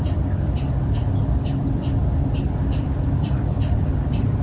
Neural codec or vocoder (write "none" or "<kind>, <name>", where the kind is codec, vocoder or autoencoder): vocoder, BigVGAN v2